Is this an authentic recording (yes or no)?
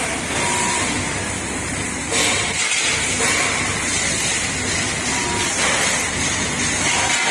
yes